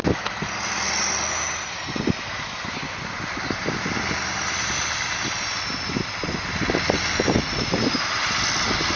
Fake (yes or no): no